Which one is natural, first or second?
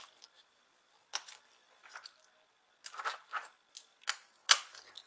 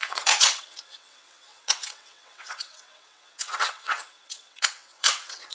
first